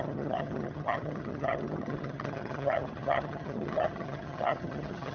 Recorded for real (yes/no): no